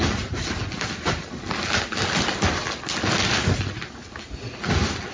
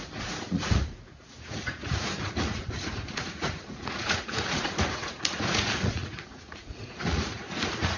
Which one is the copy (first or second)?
second